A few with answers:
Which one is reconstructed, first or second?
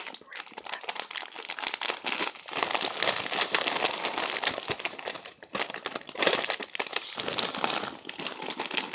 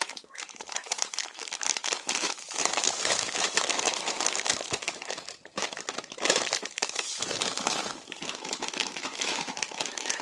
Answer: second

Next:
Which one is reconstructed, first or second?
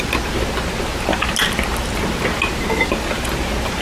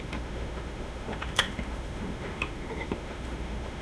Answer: second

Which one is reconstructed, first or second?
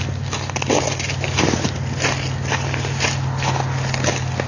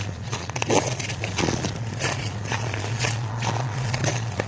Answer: second